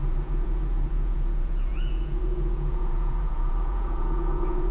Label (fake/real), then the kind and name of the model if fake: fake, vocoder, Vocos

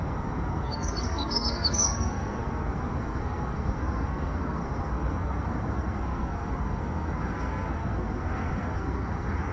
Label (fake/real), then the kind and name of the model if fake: fake, codec, SNAC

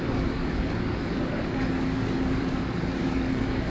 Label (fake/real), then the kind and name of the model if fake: fake, codec, DAC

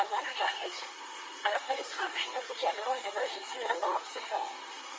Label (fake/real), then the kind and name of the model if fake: fake, codec, SNAC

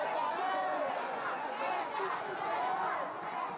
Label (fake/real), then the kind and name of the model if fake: fake, vocoder, Vocos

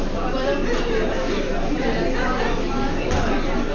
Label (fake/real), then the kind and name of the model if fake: real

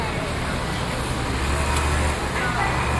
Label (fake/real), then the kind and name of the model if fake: real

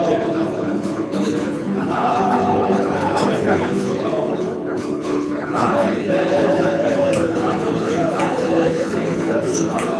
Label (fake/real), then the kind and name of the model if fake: fake, codec, HILCodec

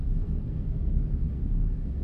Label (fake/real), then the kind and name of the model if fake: fake, codec, SNAC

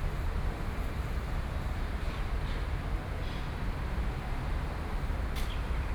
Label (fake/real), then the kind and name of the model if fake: real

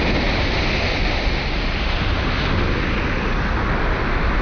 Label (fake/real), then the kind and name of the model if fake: real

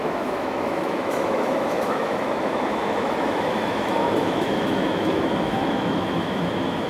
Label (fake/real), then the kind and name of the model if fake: fake, autoencoder, DAC-VAE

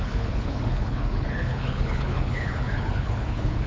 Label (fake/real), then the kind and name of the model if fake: fake, codec, HILCodec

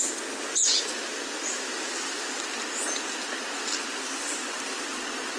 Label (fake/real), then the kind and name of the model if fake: real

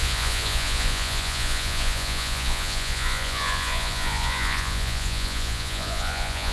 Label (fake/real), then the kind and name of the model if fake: fake, vocoder, Vocos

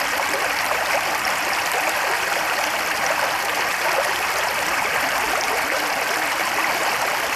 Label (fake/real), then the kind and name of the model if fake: fake, vocoder, BigVGAN v2